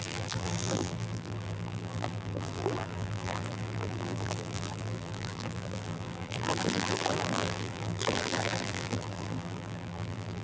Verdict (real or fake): fake